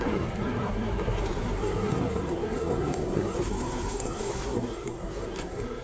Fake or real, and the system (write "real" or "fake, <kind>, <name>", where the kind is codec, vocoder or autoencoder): fake, codec, SNAC